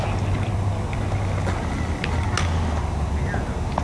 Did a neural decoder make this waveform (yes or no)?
no